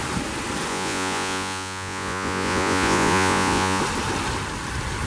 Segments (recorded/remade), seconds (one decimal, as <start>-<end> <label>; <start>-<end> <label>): 0.0-0.7 recorded; 0.7-3.8 remade; 3.8-5.1 recorded